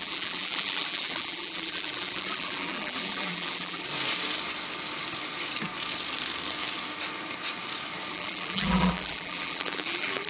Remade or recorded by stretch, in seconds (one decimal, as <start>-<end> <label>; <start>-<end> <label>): 0.0-3.9 remade; 3.9-8.1 recorded; 8.1-10.3 remade